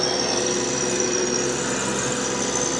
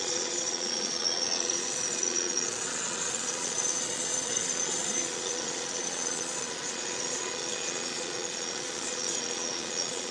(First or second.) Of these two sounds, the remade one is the second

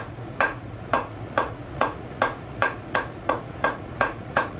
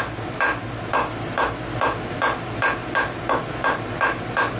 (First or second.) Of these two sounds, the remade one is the first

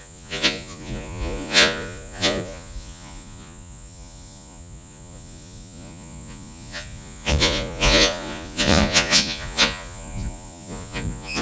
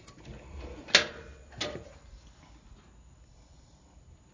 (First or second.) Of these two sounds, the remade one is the first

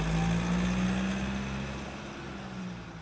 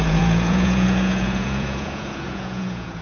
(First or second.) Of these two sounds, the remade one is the second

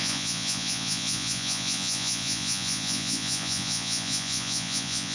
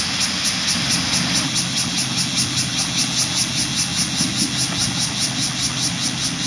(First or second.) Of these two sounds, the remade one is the first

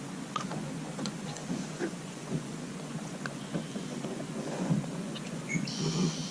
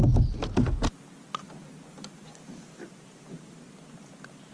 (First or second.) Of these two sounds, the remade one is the first